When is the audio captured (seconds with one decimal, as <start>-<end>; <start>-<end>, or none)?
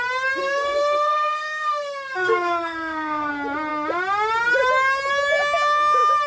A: 0.0-0.4; 3.3-6.3